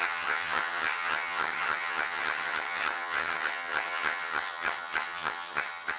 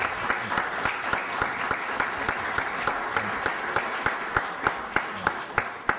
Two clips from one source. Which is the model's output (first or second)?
first